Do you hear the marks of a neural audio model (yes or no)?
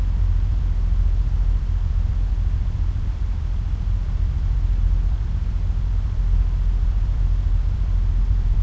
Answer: yes